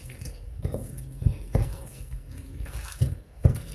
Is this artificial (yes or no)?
yes